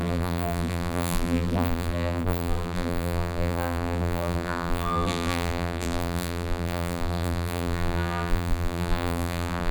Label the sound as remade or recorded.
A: remade